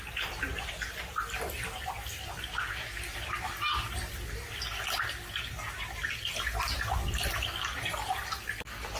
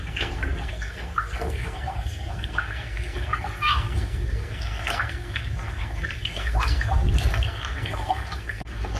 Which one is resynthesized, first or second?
second